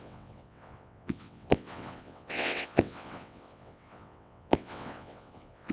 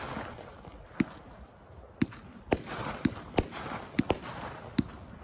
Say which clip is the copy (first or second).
first